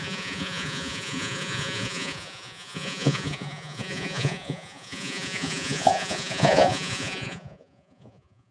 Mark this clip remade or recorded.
remade